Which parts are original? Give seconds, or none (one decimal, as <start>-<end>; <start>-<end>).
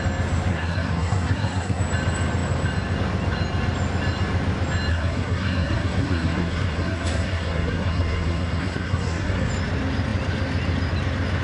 0.0-0.5; 1.8-4.9; 9.5-11.4